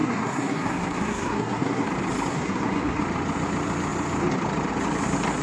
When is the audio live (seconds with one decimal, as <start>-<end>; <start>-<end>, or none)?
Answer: 1.9-2.3; 3.0-5.4